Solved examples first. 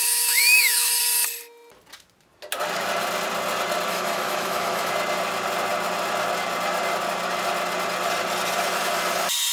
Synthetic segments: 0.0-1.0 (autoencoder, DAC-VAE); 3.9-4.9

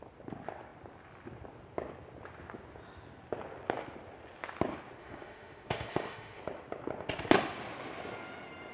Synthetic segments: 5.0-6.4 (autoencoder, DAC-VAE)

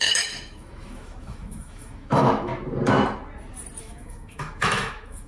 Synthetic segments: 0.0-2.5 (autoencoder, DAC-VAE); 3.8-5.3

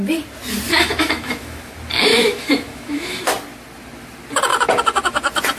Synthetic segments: 0.7-1.7 (autoencoder, DAC-VAE); 2.1-3.3

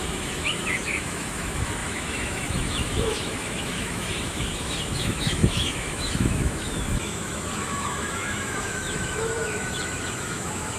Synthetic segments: 0.0-10.8 (autoencoder, DAC-VAE)

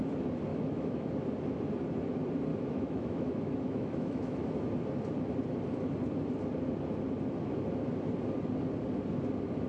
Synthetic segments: 0.5-1.1 (autoencoder, DAC-VAE); 2.5-4.7

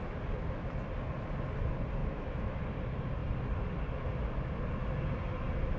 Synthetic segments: 2.0-2.6 (autoencoder, DAC-VAE)